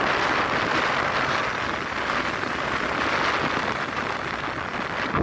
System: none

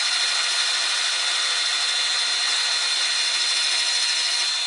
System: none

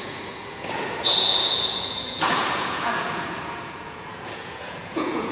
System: vocoder, Vocos